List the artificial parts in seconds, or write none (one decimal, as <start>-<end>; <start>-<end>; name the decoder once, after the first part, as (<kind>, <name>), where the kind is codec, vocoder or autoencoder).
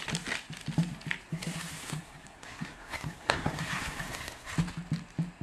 1.3-4.5 (codec, SNAC)